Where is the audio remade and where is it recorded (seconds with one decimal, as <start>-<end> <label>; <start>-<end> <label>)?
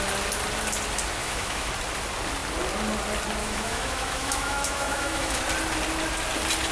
0.0-1.2 recorded; 1.2-1.7 remade; 1.7-3.4 recorded; 3.4-5.4 remade; 5.4-6.7 recorded